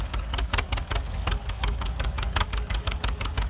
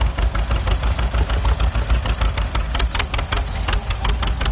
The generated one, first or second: first